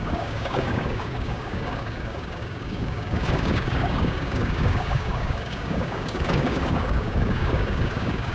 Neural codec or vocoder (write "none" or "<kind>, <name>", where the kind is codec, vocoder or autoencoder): codec, DAC